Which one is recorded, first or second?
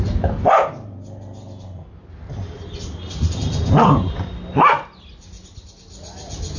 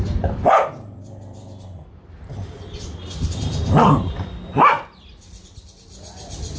first